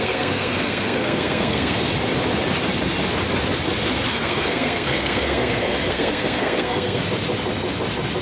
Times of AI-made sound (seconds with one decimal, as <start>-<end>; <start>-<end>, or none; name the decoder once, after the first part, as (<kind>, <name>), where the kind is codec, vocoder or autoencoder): 0.0-1.9 (codec, SNAC); 4.1-7.0